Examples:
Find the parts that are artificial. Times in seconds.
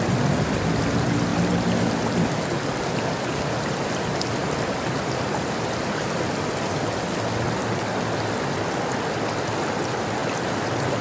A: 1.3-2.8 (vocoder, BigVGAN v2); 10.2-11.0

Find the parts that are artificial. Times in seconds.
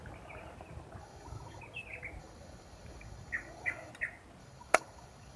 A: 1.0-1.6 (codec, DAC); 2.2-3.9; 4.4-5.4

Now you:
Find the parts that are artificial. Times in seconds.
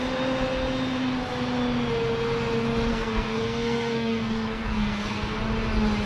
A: 2.9-5.4 (codec, SNAC)